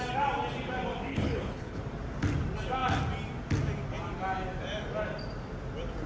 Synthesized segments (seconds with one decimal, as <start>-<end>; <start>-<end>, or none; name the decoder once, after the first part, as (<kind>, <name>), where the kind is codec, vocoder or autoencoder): 1.1-1.8 (codec, HILCodec)